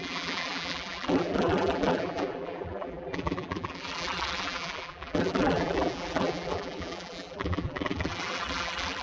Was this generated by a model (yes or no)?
yes